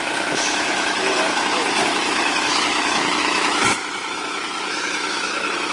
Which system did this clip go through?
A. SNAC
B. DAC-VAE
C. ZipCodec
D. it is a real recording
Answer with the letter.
B